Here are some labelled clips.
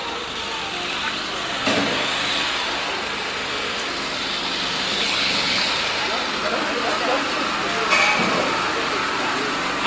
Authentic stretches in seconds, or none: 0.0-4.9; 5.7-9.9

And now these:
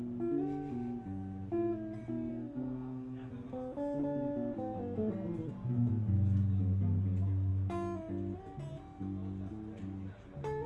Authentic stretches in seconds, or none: 0.0-2.3; 3.3-10.7

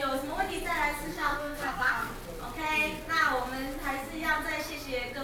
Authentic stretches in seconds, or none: 0.0-1.1; 2.1-5.2

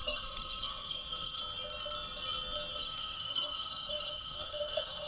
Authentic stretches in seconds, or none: 1.4-2.7

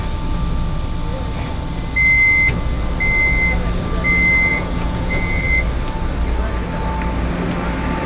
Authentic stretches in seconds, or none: 0.0-4.5; 5.4-8.1

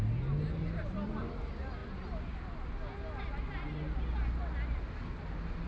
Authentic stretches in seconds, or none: 0.0-5.7